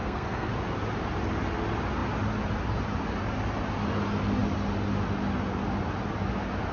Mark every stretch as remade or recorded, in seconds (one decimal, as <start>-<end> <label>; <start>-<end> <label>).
0.0-0.5 remade; 0.5-6.7 recorded